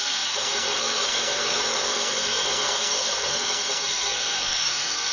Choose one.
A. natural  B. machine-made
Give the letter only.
B